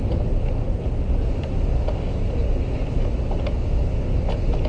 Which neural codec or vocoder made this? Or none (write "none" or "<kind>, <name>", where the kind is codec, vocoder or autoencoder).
none